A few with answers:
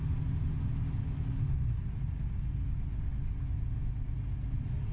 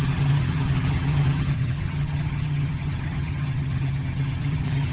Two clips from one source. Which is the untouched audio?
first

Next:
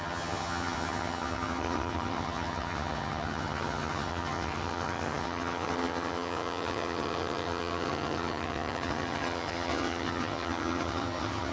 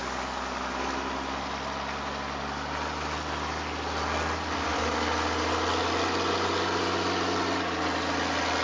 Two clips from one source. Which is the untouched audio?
second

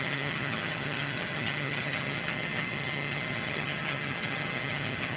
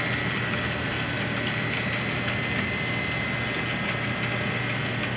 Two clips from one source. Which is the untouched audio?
second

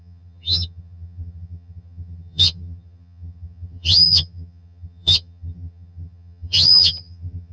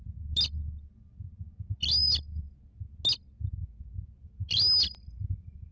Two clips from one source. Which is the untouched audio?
second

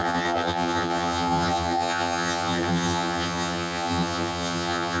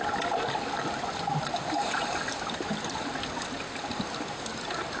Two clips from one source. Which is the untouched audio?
second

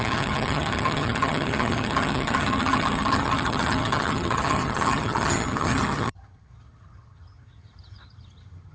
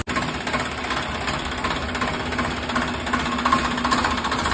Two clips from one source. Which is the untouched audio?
second